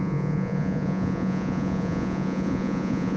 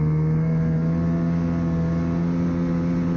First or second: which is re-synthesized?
first